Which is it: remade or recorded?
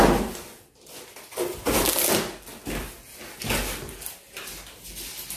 recorded